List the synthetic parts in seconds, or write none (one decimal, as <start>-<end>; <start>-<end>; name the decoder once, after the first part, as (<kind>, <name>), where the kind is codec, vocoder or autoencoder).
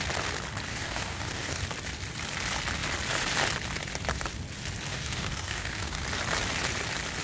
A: 0.7-1.6 (codec, DAC); 4.9-6.0